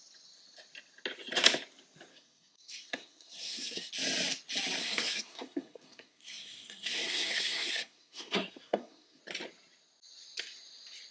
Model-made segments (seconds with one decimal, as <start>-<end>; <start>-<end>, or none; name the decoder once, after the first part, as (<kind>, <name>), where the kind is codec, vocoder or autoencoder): 2.1-3.9 (codec, SNAC); 4.8-9.2